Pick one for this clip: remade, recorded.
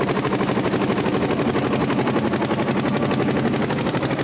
recorded